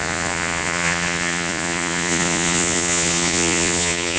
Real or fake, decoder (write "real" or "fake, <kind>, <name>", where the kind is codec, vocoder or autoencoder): fake, vocoder, Vocos